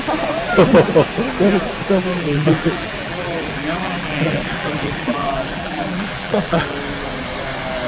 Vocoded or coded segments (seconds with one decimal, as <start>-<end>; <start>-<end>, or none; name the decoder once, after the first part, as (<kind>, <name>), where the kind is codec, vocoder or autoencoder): 2.1-6.8 (vocoder, BigVGAN v2)